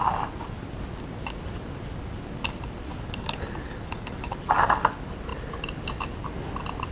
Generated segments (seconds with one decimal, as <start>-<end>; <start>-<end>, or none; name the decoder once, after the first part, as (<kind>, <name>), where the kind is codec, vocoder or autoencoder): 2.9-4.3 (codec, DAC)